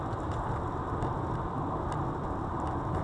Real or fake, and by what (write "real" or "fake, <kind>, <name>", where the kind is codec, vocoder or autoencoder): real